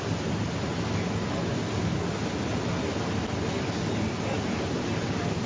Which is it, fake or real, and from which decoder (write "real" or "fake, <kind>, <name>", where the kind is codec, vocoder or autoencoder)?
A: real